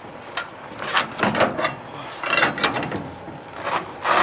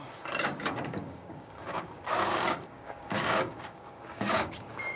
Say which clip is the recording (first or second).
first